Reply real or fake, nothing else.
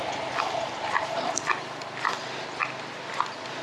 real